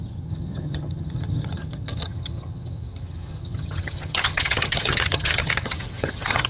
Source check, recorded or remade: remade